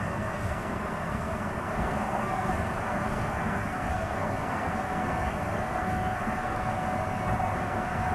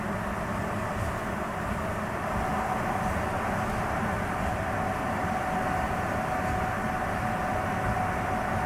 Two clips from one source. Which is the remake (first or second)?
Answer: first